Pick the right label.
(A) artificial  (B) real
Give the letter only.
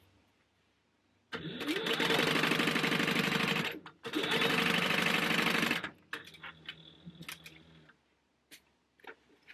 B